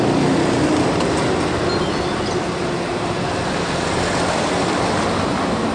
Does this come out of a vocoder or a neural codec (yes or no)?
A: no